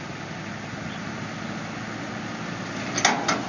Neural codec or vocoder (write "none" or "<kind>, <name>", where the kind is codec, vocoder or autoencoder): none